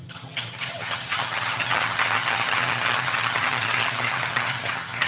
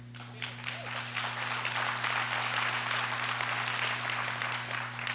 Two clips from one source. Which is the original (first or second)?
second